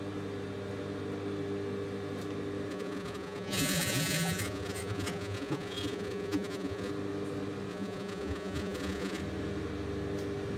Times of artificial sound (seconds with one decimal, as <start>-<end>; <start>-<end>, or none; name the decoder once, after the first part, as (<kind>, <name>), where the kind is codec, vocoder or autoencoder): 2.7-6.9 (vocoder, Vocos); 7.7-9.2